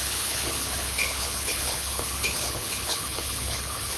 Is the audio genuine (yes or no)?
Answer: no